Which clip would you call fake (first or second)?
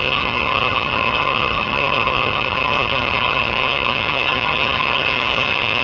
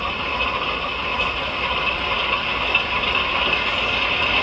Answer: first